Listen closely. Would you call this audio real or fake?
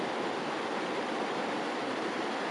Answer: real